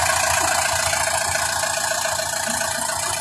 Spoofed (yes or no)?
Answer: no